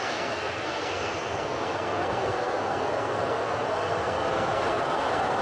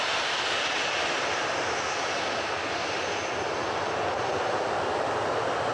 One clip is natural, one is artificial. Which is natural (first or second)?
second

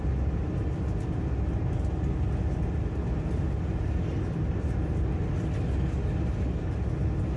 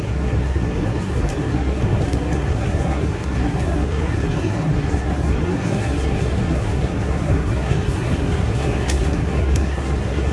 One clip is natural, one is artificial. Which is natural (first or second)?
first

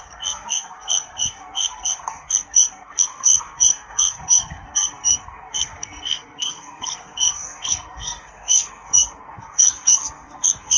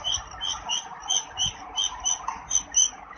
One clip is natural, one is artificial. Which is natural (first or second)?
second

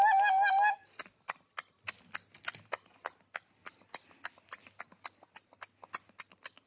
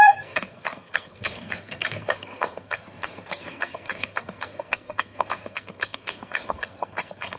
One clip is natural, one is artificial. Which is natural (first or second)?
first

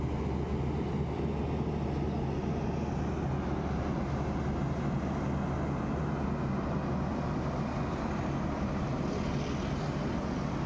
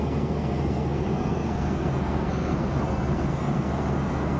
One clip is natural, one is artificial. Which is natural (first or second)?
first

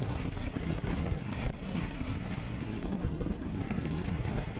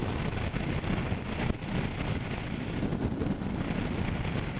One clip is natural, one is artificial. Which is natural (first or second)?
second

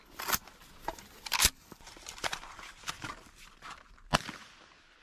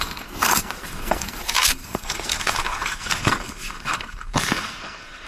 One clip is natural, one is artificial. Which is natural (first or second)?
first